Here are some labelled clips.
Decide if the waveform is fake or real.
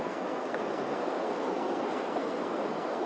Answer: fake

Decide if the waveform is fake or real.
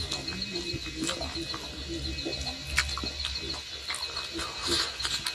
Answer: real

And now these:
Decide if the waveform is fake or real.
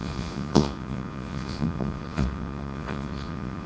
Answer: fake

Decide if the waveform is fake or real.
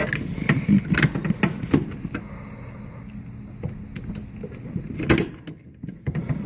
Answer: real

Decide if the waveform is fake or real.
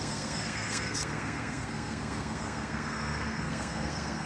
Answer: fake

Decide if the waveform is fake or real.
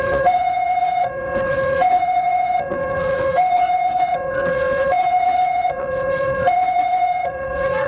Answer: fake